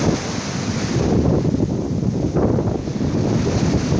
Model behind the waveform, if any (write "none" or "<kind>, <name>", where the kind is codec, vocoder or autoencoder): none